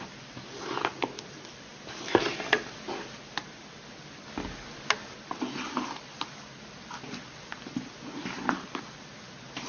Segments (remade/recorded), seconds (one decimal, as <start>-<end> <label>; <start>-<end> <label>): 0.0-9.7 recorded

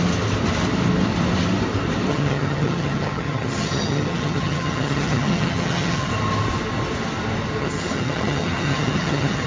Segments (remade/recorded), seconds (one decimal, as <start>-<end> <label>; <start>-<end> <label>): 0.0-2.1 recorded; 2.1-6.1 remade; 6.1-7.6 recorded; 7.6-9.5 remade

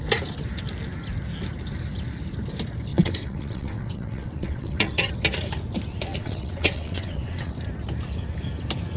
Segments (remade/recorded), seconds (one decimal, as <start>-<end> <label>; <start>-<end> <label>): 0.0-2.9 recorded; 2.9-5.1 remade; 5.1-6.1 recorded; 6.1-7.5 remade; 7.5-9.0 recorded

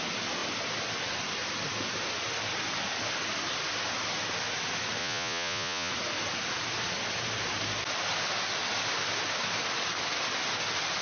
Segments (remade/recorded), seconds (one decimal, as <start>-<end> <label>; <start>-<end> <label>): 0.0-5.0 recorded; 5.0-5.9 remade; 5.9-11.0 recorded

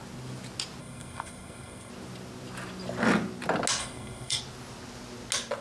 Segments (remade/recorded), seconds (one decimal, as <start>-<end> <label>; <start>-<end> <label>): 0.0-0.8 recorded; 0.8-1.9 remade; 1.9-3.8 recorded; 3.8-4.4 remade; 4.4-5.6 recorded

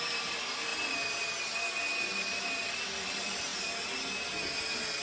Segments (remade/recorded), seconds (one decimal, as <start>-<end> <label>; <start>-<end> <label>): 0.0-0.7 remade; 0.7-2.8 recorded; 2.8-3.5 remade; 3.5-4.6 recorded; 4.6-5.0 remade

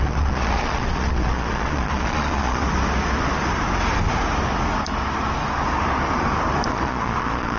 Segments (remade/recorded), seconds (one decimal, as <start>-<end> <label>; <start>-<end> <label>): 0.0-2.6 remade; 2.6-6.7 recorded; 6.7-7.6 remade

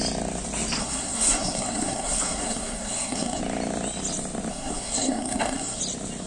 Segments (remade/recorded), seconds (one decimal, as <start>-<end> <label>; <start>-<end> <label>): 0.0-0.8 recorded; 0.8-3.4 remade; 3.4-4.5 recorded; 4.5-5.8 remade; 5.8-6.3 recorded